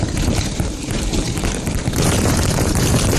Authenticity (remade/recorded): remade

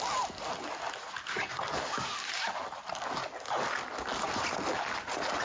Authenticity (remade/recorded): recorded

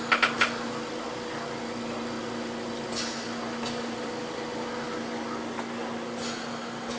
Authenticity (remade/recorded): recorded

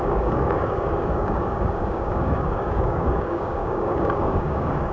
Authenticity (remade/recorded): remade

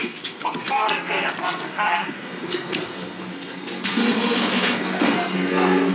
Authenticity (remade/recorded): remade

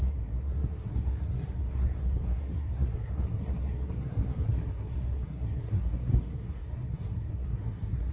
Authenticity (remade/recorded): remade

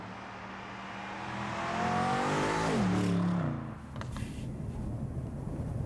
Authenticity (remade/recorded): recorded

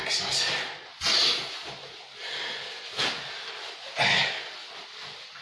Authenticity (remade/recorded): recorded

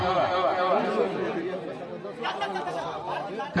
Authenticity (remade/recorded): recorded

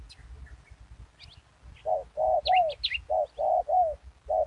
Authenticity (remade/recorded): recorded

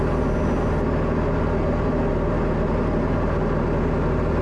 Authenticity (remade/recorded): recorded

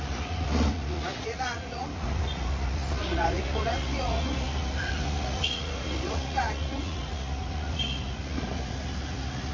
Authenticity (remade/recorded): remade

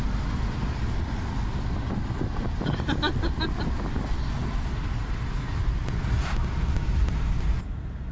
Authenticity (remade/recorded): recorded